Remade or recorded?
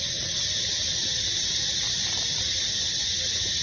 recorded